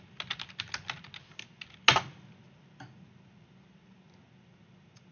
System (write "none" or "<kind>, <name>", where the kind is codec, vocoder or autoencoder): none